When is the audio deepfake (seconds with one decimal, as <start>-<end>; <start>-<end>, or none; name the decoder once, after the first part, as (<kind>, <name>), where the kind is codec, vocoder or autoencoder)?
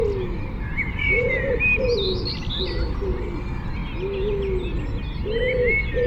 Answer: 0.7-1.5 (vocoder, BigVGAN v2)